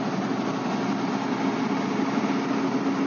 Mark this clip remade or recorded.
recorded